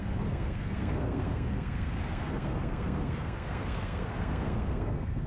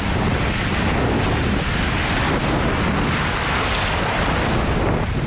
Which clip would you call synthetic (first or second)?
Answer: first